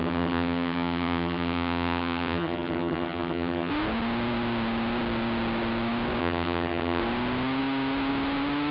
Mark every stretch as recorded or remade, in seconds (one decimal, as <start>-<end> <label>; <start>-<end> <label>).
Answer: 0.0-3.7 remade; 3.7-6.2 recorded; 6.2-7.0 remade; 7.0-8.7 recorded